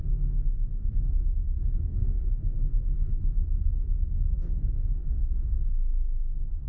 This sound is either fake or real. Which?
fake